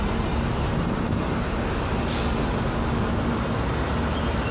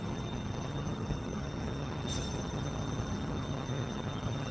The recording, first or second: first